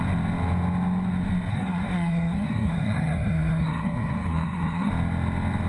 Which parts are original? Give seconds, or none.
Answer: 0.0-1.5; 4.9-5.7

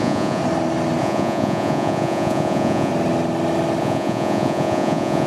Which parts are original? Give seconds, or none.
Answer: 0.4-1.0; 2.9-3.8

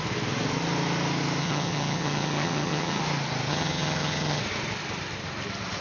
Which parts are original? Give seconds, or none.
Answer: 0.0-1.4; 3.0-3.5; 4.4-5.8

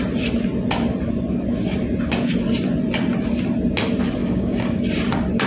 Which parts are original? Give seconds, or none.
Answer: 0.0-4.2; 4.8-5.5

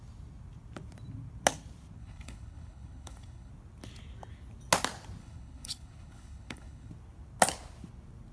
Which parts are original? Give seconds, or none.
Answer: 0.0-2.0; 3.5-5.2; 6.9-8.3